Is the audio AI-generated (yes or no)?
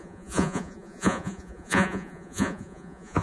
yes